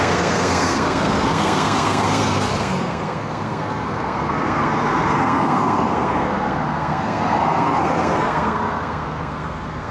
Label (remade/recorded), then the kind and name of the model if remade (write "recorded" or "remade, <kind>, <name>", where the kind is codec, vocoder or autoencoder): remade, codec, SNAC